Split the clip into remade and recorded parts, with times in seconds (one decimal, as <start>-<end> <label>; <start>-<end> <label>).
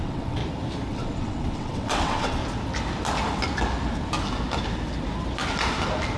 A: 0.0-0.4 remade; 0.4-0.9 recorded; 0.9-2.4 remade; 2.4-6.2 recorded